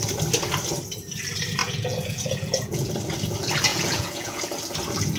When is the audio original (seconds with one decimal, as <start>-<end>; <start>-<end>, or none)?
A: 0.0-1.6; 2.9-3.7; 4.4-5.2